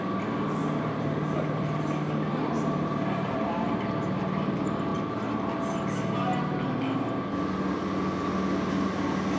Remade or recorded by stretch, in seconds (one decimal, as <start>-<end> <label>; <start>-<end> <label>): 0.0-0.6 recorded; 0.6-3.5 remade; 3.5-9.4 recorded